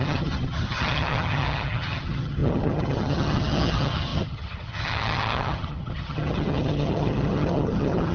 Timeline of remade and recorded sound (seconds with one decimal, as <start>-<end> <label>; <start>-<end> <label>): 0.0-8.1 remade